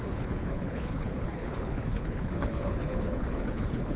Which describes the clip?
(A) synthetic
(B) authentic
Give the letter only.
A